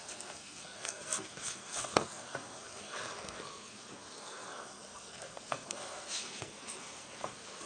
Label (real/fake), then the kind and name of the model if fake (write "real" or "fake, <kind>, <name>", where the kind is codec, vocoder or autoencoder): fake, codec, SNAC